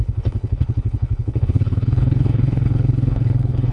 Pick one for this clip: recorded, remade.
remade